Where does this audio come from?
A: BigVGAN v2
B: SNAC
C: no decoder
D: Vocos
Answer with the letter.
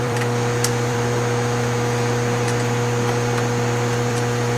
A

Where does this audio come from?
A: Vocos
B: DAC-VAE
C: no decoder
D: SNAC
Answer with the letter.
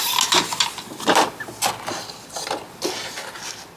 C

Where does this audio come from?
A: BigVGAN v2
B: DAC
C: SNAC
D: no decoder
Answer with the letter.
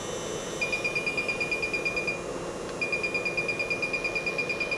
D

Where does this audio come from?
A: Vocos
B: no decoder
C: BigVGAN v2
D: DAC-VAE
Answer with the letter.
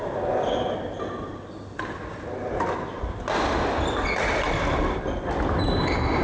B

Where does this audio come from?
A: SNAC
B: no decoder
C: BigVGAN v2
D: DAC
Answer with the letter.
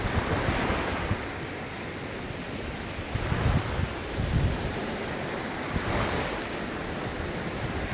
B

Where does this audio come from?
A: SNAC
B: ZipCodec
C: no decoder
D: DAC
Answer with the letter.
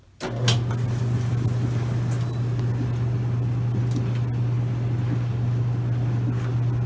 C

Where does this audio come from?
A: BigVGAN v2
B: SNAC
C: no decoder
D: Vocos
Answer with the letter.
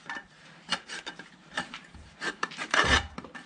A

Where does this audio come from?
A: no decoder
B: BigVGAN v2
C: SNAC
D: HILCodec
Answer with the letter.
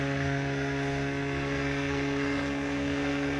C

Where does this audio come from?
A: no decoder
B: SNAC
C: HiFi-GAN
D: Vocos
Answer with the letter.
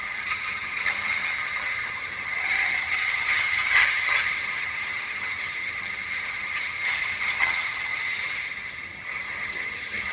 C